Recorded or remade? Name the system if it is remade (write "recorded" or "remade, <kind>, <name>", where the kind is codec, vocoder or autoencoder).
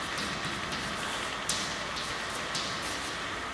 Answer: recorded